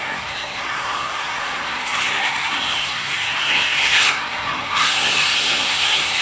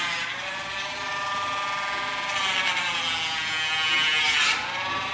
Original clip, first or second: second